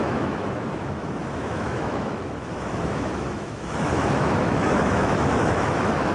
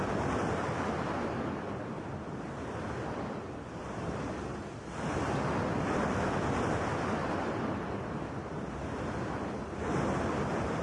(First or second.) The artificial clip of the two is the first